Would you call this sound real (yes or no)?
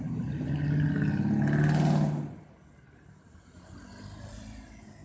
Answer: yes